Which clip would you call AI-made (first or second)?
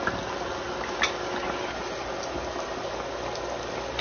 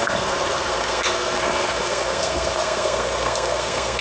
second